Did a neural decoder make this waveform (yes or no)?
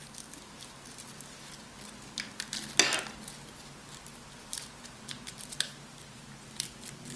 no